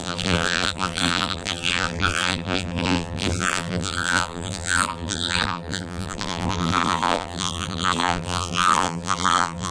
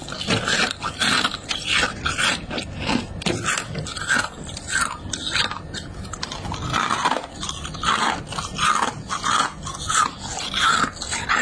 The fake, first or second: first